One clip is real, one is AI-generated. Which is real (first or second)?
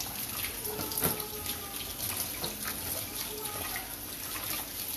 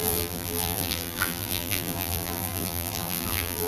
first